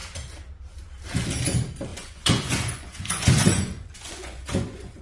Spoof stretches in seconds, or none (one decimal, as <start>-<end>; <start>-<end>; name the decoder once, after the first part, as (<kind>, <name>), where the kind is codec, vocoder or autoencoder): 1.9-5.0 (vocoder, Vocos)

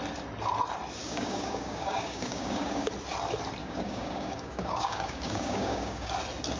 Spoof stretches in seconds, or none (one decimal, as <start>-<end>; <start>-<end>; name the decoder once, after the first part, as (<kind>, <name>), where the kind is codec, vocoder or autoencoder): 1.0-2.9 (codec, DAC); 3.6-6.1

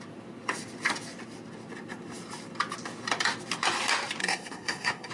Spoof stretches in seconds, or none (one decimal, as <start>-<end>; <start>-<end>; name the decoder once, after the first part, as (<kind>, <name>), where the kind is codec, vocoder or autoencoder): 4.2-5.1 (codec, SNAC)